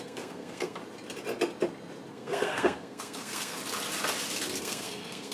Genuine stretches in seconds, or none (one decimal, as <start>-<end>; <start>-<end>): 0.8-2.1; 3.6-4.6